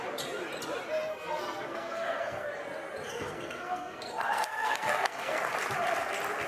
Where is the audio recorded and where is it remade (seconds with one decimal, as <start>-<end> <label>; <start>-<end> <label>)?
0.0-1.1 recorded; 1.1-2.5 remade; 2.5-3.1 recorded; 3.1-5.5 remade; 5.5-6.5 recorded